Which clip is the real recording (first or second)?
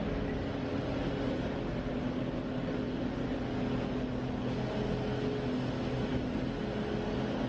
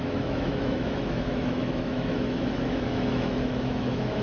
first